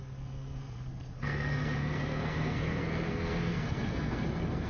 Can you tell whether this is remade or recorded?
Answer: remade